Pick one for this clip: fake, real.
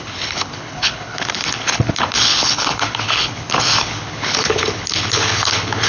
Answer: fake